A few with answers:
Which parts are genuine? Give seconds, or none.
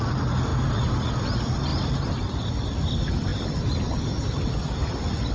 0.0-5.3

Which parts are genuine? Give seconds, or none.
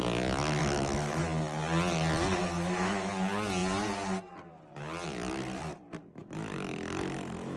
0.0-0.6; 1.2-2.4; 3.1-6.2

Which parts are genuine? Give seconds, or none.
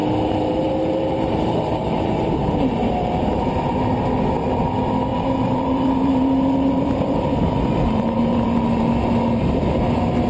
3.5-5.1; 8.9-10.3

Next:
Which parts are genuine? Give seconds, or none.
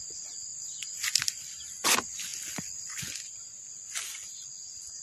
0.0-5.0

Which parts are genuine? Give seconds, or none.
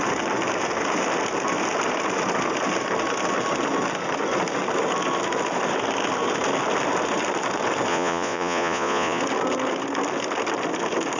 0.0-7.9; 9.2-11.2